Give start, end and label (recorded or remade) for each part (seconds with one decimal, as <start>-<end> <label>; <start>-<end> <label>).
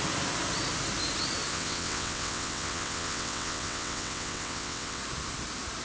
0.0-1.5 recorded; 1.5-5.0 remade; 5.0-5.8 recorded